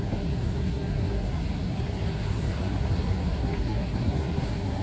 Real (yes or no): no